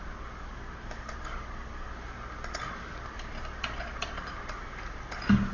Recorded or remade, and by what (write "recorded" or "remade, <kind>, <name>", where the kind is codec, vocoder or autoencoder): recorded